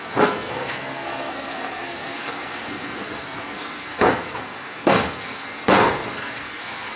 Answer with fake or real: fake